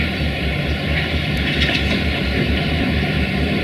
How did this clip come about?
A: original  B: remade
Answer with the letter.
B